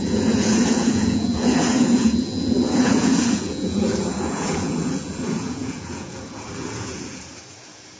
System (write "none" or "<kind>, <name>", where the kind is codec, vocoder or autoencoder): vocoder, Vocos